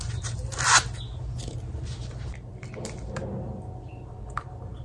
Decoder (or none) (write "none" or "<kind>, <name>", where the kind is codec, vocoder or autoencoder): none